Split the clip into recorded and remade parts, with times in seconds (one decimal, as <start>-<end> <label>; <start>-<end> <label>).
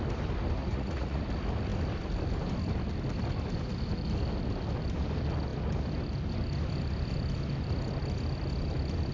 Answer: 0.0-0.6 recorded; 0.6-1.2 remade; 1.2-9.1 recorded